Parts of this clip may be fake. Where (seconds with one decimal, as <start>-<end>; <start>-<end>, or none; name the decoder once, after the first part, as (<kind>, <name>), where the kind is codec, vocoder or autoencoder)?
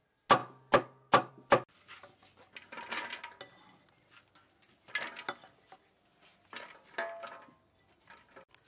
none